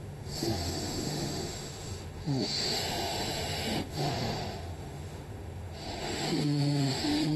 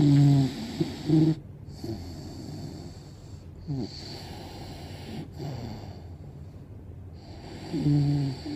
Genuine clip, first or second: second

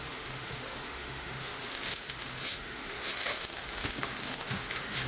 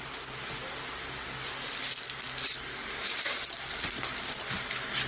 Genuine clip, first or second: second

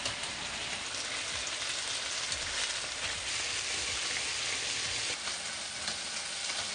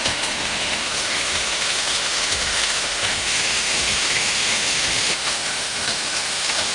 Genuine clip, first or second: first